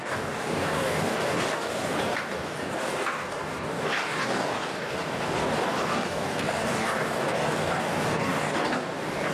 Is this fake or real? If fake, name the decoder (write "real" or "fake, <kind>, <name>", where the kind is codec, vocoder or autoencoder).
fake, codec, DAC